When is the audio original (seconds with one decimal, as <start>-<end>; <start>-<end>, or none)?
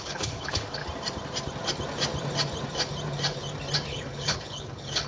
0.8-3.9